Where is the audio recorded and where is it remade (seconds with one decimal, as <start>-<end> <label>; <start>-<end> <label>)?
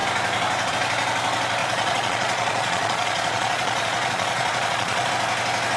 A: 0.0-1.6 recorded; 1.6-5.1 remade; 5.1-5.8 recorded